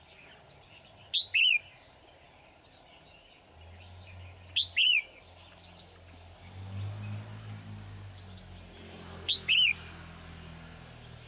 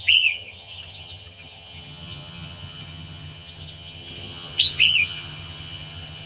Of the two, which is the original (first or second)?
first